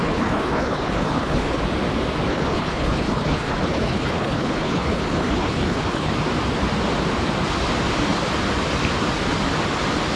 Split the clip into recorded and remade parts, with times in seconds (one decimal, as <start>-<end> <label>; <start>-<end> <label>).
0.0-1.6 remade; 1.6-2.3 recorded; 2.3-6.1 remade; 6.1-10.2 recorded